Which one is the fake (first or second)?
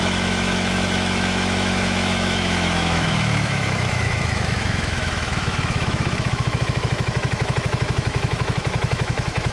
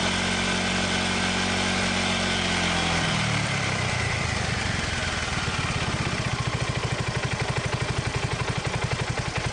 first